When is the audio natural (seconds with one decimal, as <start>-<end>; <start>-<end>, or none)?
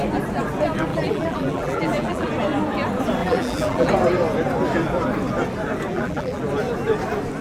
0.0-0.9; 2.3-3.2; 3.9-5.9; 6.4-7.4